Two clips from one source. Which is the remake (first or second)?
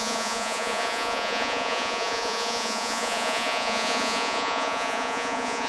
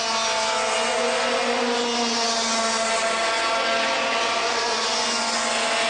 first